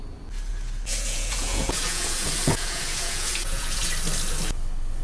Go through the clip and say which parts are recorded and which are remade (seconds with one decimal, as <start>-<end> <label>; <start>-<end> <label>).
0.0-0.9 recorded; 0.9-3.9 remade; 3.9-5.0 recorded